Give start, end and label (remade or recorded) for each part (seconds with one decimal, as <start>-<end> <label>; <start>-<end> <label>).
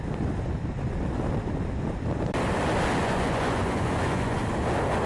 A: 0.0-3.0 recorded; 3.0-4.4 remade; 4.4-5.1 recorded